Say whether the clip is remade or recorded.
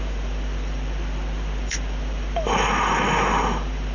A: remade